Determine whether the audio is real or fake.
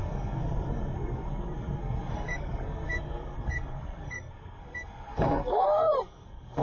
fake